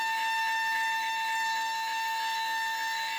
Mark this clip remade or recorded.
remade